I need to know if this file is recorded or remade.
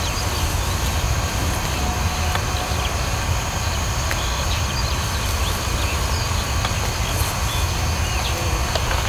recorded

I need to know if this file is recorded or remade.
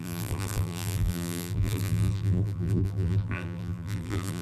remade